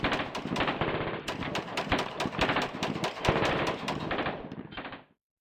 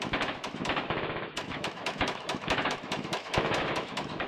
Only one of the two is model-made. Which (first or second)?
second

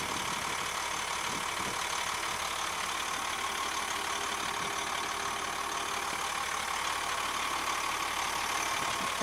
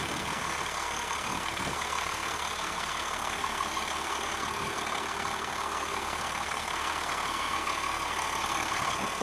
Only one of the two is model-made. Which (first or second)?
second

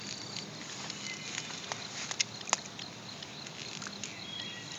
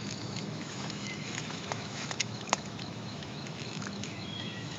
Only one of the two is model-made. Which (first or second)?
second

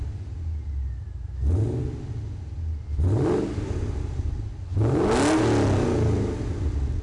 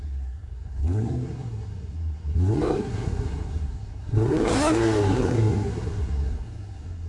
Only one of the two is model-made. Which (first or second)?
second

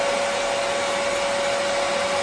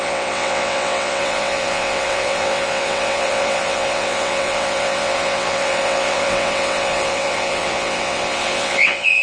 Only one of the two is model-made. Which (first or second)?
second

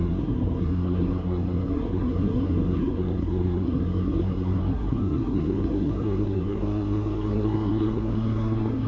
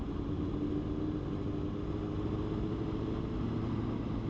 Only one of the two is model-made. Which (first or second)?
first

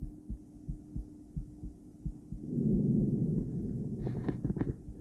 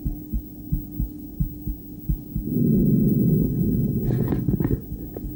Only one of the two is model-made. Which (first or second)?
second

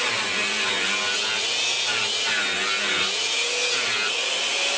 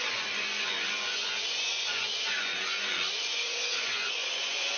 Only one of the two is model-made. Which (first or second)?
second